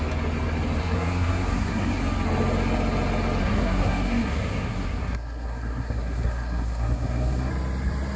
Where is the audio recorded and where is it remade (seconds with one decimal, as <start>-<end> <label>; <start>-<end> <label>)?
0.0-0.8 recorded; 0.8-2.0 remade; 2.0-3.4 recorded; 3.4-7.5 remade; 7.5-8.2 recorded